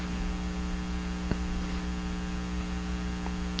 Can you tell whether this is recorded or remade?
recorded